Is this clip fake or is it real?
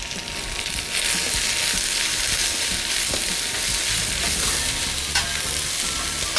real